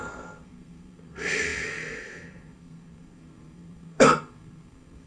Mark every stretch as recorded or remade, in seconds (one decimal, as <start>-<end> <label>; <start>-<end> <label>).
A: 0.0-5.1 remade